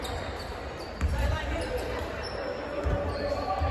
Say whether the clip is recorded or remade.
remade